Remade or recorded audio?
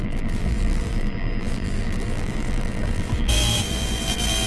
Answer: remade